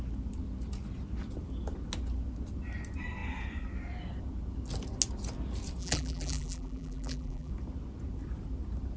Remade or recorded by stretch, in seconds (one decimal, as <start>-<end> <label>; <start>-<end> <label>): 0.0-5.8 recorded; 5.8-7.5 remade; 7.5-9.0 recorded